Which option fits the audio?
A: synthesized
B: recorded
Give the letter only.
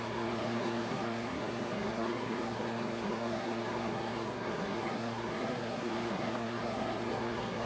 A